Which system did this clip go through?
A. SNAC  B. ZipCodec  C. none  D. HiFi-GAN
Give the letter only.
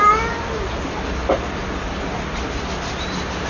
C